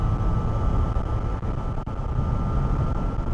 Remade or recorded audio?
recorded